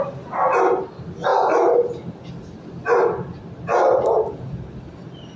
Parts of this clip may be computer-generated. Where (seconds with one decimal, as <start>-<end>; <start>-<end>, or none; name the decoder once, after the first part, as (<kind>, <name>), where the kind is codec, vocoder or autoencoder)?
1.3-2.3 (vocoder, BigVGAN v2); 2.8-5.4

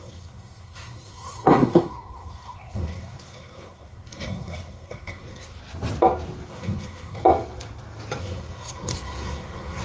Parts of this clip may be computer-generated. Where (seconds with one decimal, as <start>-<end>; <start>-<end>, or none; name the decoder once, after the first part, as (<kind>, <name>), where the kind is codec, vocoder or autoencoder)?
0.0-5.6 (codec, SNAC); 6.5-7.2; 8.2-9.8

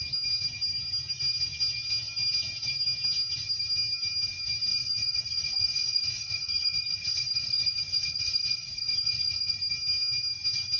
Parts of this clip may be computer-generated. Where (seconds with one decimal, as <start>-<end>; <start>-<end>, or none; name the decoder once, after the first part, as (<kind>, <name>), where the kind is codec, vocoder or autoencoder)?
4.7-9.6 (vocoder, Vocos)

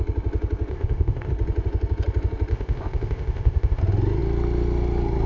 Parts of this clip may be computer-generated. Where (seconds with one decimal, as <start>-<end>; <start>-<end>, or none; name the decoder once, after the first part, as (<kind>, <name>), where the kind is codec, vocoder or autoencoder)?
0.7-1.3 (codec, ZipCodec); 2.5-3.8

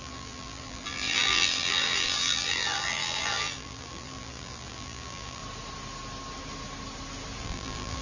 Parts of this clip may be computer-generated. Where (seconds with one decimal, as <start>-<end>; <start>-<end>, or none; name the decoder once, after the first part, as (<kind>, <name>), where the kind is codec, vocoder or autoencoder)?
0.0-5.4 (vocoder, BigVGAN v2); 7.4-8.0

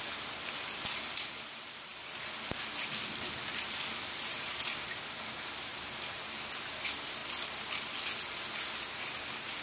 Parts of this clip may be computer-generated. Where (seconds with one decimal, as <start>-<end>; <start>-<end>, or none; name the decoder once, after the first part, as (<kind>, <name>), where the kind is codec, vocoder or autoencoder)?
none